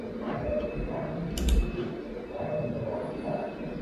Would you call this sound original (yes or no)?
yes